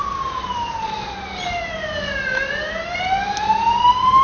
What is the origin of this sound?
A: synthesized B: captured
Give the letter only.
B